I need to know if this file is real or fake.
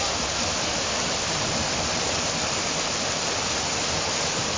real